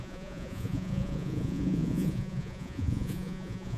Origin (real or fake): fake